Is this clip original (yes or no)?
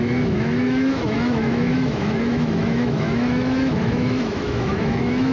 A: no